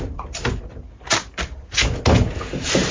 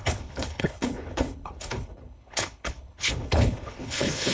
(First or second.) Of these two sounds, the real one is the first